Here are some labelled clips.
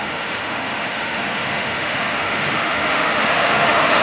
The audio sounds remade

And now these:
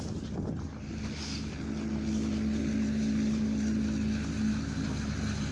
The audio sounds recorded